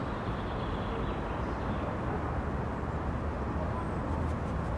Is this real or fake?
real